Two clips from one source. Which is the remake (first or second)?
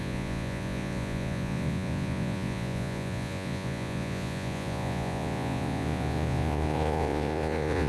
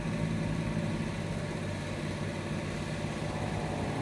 first